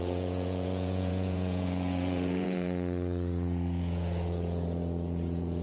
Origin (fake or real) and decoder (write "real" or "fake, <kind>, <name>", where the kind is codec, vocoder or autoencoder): fake, vocoder, Vocos